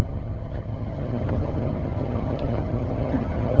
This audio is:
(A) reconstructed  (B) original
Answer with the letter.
A